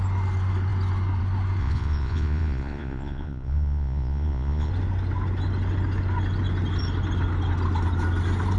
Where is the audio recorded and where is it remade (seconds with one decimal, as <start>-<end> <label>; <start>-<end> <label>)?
0.0-1.6 recorded; 1.6-4.7 remade; 4.7-8.6 recorded